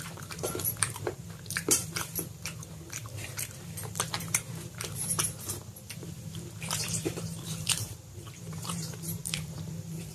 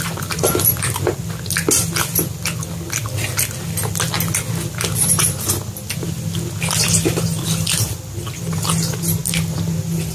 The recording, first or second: second